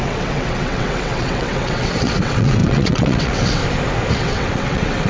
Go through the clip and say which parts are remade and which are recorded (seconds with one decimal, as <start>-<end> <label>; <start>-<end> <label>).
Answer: 0.0-3.6 remade; 3.6-4.1 recorded; 4.1-5.1 remade

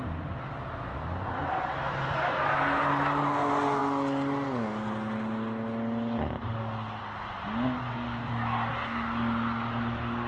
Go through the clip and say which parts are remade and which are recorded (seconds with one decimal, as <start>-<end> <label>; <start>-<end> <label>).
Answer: 0.0-10.3 recorded

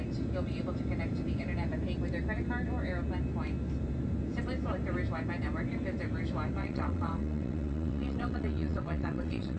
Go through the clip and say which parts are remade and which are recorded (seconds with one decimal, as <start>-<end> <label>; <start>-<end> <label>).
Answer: 0.0-6.6 recorded; 6.6-9.6 remade

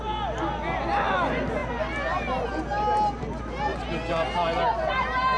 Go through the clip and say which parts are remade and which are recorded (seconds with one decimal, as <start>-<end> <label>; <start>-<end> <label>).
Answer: 0.0-5.4 recorded

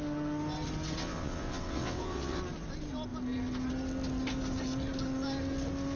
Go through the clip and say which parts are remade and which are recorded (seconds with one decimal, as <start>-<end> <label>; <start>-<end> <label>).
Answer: 0.0-1.0 recorded; 1.0-2.4 remade; 2.4-6.0 recorded

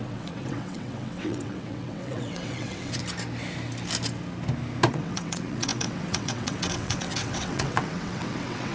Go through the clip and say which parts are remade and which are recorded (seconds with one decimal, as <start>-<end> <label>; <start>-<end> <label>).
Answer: 0.0-3.0 remade; 3.0-4.9 recorded; 4.9-8.7 remade

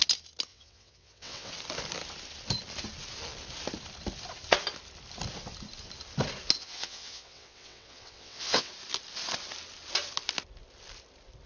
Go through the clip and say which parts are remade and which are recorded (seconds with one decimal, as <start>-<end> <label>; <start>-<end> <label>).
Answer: 0.0-0.5 recorded; 0.5-1.5 remade; 1.5-6.6 recorded; 6.6-8.7 remade; 8.7-11.5 recorded